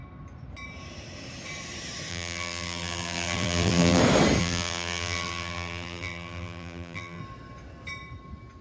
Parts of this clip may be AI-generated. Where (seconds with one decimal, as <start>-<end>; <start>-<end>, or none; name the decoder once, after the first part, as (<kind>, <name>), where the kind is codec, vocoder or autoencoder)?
2.1-4.0 (vocoder, BigVGAN v2); 4.4-7.2